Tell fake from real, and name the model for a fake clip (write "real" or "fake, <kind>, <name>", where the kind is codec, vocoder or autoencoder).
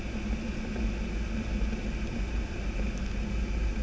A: real